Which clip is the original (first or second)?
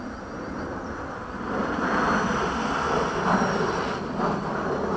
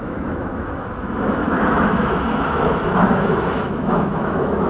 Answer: first